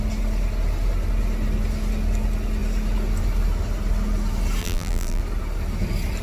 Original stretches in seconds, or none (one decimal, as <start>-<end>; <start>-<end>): 0.0-4.6; 5.2-6.2